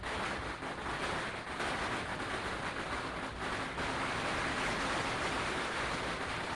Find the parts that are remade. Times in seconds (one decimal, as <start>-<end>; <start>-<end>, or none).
none